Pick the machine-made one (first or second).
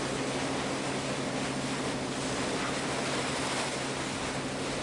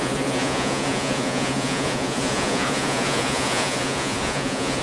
second